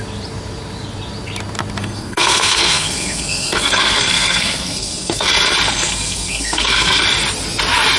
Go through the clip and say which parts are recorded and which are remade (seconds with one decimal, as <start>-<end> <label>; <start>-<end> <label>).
0.0-1.8 recorded; 1.8-5.3 remade; 5.3-5.7 recorded; 5.7-7.0 remade; 7.0-8.0 recorded